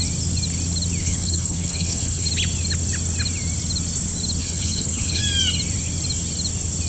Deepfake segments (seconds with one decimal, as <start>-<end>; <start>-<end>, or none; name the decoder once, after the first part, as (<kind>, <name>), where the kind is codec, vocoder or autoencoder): 1.0-2.3 (codec, HILCodec); 4.4-5.2